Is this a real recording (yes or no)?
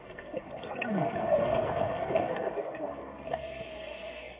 no